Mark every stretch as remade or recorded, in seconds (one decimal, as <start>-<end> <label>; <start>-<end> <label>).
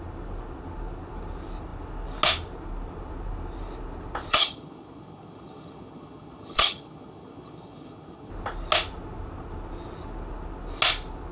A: 0.0-4.3 recorded; 4.3-8.3 remade; 8.3-11.3 recorded